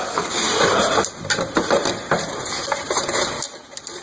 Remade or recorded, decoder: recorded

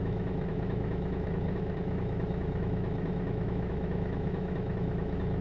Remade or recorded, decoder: remade, autoencoder, DAC-VAE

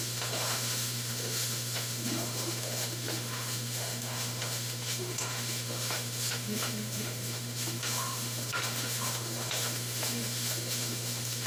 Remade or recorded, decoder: remade, autoencoder, DAC-VAE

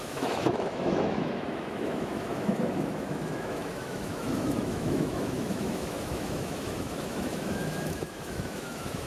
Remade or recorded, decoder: remade, autoencoder, DAC-VAE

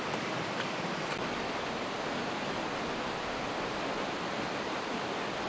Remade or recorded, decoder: recorded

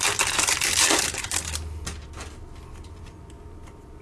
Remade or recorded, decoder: recorded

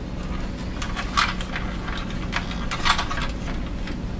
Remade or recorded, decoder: recorded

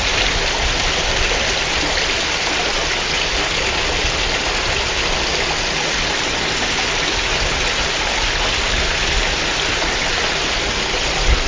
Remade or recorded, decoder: recorded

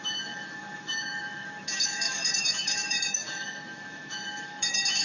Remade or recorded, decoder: remade, autoencoder, DAC-VAE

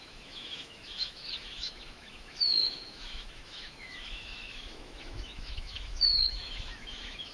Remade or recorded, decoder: remade, autoencoder, DAC-VAE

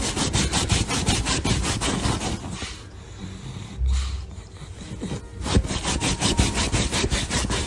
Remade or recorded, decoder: recorded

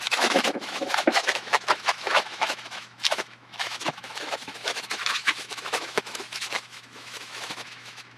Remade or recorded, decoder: remade, autoencoder, DAC-VAE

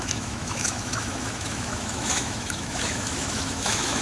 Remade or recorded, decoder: remade, autoencoder, DAC-VAE